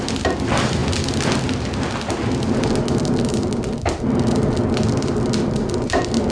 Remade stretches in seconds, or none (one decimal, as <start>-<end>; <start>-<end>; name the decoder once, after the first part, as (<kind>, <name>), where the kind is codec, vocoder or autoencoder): none